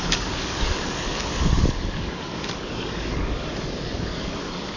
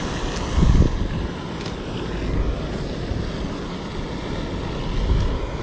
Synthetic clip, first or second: first